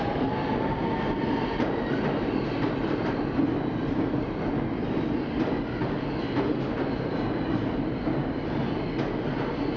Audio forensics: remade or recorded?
recorded